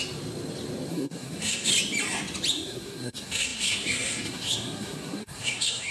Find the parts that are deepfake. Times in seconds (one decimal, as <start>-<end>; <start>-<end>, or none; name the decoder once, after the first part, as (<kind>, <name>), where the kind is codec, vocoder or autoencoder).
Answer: 0.9-1.7 (codec, SNAC); 2.5-5.9